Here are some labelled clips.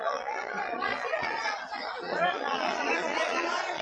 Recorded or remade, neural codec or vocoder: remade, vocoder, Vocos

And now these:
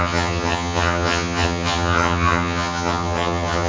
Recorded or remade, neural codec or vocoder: remade, vocoder, HiFi-GAN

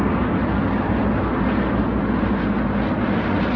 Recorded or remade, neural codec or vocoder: recorded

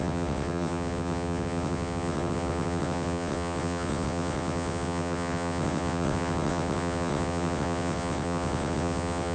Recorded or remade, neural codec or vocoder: remade, vocoder, WaveNeXt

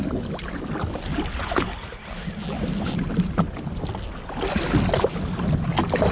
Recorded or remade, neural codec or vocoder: recorded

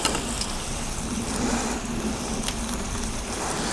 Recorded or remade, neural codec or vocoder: recorded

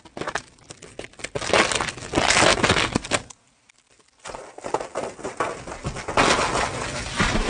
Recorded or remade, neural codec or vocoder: recorded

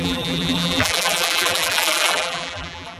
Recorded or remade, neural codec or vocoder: remade, vocoder, BigVGAN v2